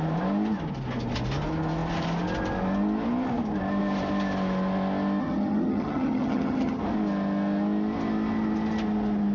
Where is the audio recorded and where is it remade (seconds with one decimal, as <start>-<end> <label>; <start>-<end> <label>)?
0.0-5.2 recorded; 5.2-6.8 remade; 6.8-9.3 recorded